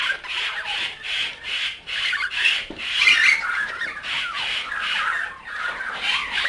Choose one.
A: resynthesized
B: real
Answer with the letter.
A